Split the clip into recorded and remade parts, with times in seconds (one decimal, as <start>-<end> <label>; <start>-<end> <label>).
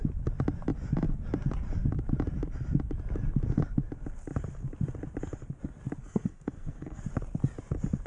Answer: 0.0-6.0 recorded; 6.0-7.0 remade; 7.0-8.1 recorded